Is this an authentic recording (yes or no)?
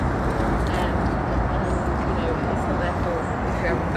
yes